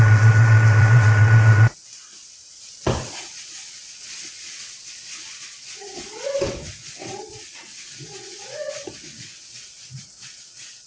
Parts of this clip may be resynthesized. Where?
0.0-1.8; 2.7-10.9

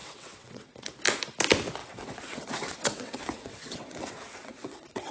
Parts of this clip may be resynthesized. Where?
0.0-0.9; 1.8-5.1

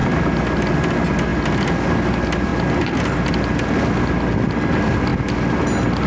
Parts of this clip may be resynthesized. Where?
none

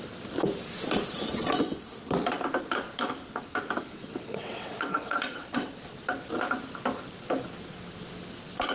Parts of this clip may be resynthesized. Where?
3.9-5.7

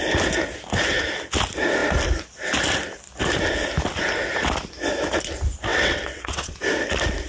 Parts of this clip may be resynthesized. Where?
5.7-6.6

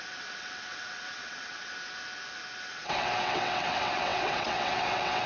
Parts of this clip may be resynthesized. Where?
0.0-1.7; 2.7-5.3

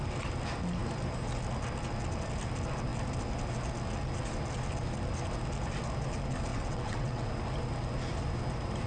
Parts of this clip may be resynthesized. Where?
6.5-7.3

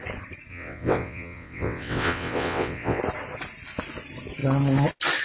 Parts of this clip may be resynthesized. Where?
0.5-3.0